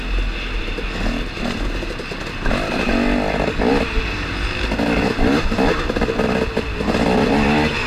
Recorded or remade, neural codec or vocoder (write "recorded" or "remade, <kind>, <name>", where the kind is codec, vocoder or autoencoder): recorded